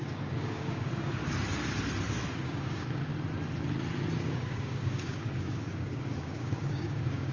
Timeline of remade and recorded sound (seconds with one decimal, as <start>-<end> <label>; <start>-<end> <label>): 0.0-1.2 remade; 1.2-2.3 recorded; 2.3-3.1 remade; 3.1-4.2 recorded; 4.2-7.3 remade